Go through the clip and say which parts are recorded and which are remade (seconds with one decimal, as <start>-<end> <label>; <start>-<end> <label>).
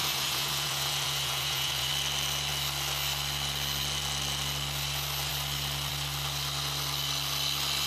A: 0.0-1.9 remade; 1.9-7.9 recorded